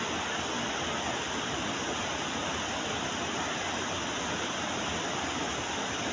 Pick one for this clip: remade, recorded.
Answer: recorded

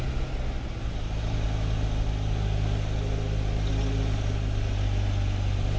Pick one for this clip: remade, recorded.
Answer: recorded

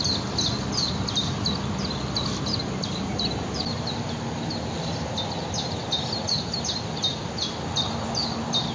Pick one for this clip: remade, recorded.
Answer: recorded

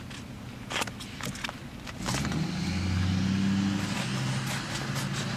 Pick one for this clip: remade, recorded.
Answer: recorded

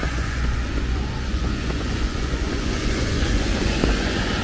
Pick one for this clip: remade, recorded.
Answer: remade